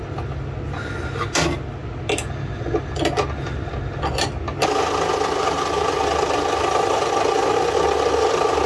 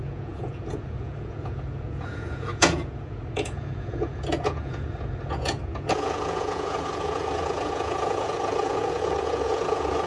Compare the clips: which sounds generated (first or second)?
second